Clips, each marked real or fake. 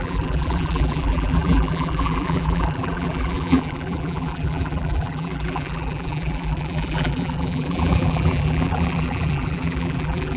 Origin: fake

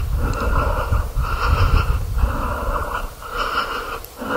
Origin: fake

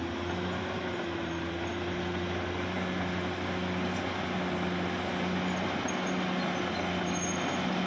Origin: real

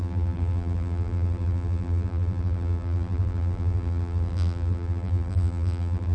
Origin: fake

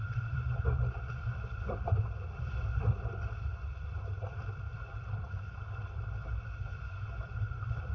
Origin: fake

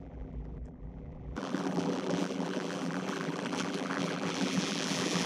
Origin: fake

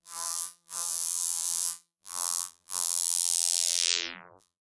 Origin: fake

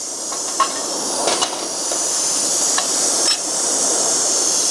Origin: fake